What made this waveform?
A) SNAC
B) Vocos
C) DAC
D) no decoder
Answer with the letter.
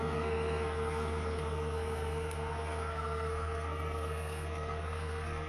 A